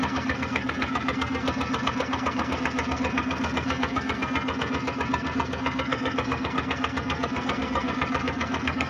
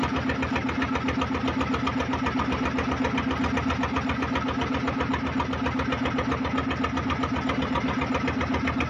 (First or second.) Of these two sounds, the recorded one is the second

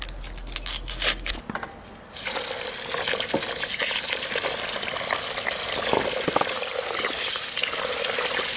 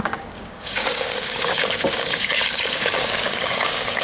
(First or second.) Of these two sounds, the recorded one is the first